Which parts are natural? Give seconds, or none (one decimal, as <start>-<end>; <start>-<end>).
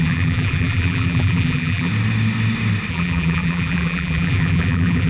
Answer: 1.9-2.9